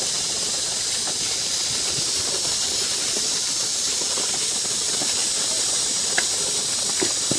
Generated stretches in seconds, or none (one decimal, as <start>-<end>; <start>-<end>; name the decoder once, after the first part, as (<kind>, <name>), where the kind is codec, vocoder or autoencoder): 0.0-7.4 (vocoder, BigVGAN v2)